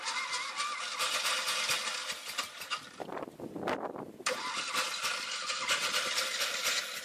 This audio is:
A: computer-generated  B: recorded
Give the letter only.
B